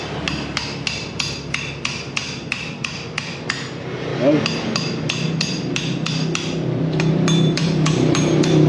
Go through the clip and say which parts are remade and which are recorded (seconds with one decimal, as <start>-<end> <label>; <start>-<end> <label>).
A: 0.0-2.2 recorded; 2.2-3.3 remade; 3.3-4.1 recorded; 4.1-8.7 remade